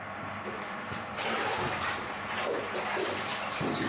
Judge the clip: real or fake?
real